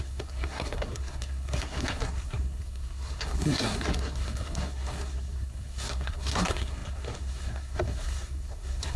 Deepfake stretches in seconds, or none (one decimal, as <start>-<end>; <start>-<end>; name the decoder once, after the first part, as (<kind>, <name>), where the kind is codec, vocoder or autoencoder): 0.0-9.0 (codec, SNAC)